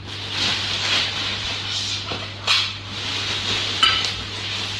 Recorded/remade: recorded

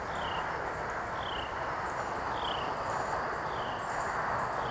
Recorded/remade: recorded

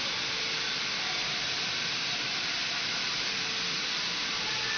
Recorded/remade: remade